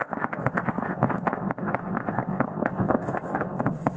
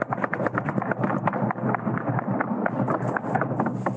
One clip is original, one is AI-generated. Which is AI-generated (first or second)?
first